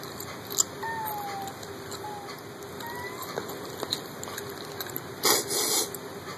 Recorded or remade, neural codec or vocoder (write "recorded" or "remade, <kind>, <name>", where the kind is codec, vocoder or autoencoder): recorded